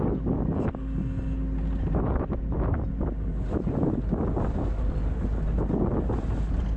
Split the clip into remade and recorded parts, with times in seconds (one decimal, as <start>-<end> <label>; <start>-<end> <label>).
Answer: 0.0-6.8 recorded